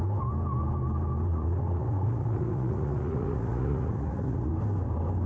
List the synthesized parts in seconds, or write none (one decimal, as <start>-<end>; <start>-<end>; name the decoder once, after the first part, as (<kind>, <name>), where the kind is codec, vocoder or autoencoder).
1.3-4.5 (vocoder, Vocos)

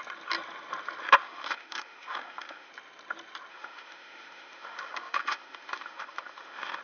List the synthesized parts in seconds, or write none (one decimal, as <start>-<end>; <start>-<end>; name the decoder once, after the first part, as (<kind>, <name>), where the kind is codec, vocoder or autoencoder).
1.2-2.7 (autoencoder, DAC-VAE); 3.5-6.8

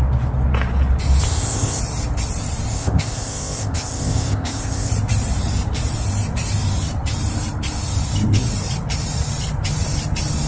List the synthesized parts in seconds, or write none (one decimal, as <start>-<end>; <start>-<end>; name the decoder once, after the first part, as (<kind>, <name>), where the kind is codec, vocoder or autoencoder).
1.2-1.8 (codec, ZipCodec); 2.7-4.9

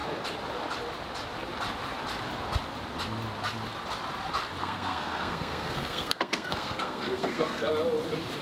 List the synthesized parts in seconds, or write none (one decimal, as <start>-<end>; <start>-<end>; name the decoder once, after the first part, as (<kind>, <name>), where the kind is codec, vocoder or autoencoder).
4.6-7.7 (codec, SNAC)

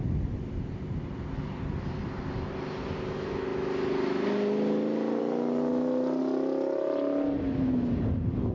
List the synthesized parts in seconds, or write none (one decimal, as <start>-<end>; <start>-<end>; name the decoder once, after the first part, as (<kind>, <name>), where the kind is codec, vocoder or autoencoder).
none

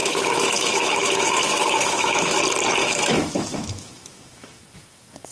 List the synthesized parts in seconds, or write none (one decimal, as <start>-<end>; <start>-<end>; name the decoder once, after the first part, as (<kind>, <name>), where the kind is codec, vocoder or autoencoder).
0.0-2.4 (autoencoder, DAC-VAE); 2.8-5.3